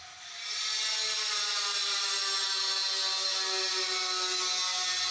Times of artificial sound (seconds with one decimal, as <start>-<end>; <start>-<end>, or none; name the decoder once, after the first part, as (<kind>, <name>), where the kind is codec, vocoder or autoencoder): none